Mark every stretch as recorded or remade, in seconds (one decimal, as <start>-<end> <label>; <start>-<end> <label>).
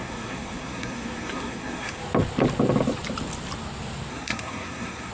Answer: 0.0-2.0 remade; 2.0-4.1 recorded; 4.1-5.1 remade